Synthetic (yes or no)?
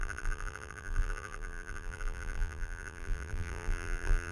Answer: yes